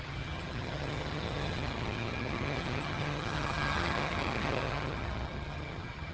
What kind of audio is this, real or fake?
fake